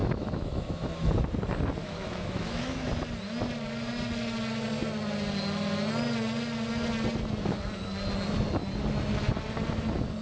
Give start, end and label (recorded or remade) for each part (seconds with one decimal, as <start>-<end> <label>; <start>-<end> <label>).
0.0-1.1 remade; 1.1-1.8 recorded; 1.8-2.9 remade; 2.9-10.2 recorded